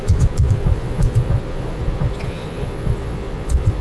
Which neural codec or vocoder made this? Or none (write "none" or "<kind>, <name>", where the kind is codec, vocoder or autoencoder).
vocoder, Vocos